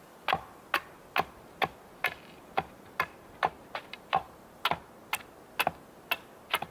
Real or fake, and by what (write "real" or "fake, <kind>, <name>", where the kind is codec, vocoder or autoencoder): real